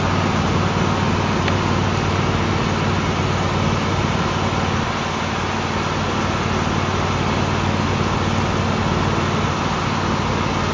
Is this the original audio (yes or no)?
yes